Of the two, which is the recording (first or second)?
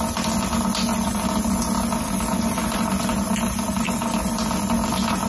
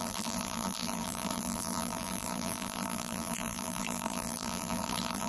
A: first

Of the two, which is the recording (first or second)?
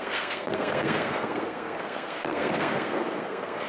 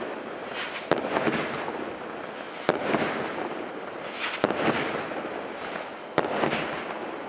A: second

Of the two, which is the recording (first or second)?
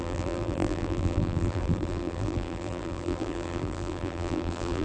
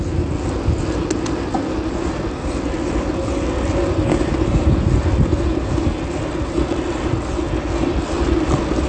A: second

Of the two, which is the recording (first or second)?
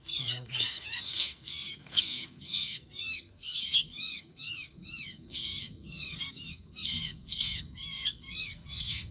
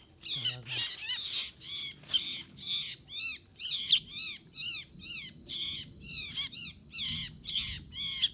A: second